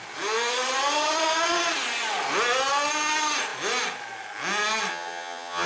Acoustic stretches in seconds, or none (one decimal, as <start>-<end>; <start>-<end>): 0.0-4.9